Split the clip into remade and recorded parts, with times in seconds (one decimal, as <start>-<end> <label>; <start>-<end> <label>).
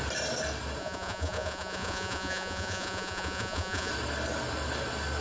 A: 0.0-0.8 recorded; 0.8-3.9 remade; 3.9-5.2 recorded